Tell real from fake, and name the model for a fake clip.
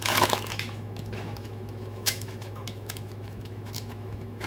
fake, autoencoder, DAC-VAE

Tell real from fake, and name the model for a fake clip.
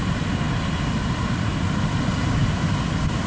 real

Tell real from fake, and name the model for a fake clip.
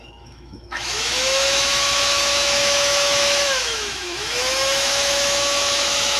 fake, autoencoder, DAC-VAE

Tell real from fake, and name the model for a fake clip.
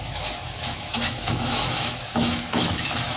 fake, autoencoder, DAC-VAE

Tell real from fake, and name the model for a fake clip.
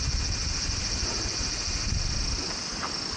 real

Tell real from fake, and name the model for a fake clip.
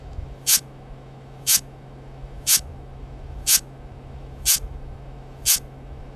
fake, autoencoder, DAC-VAE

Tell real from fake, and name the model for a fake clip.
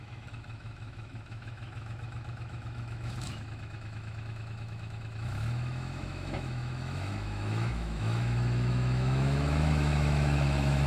fake, autoencoder, DAC-VAE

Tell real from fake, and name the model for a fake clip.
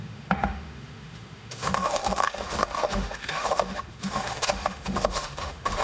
fake, autoencoder, DAC-VAE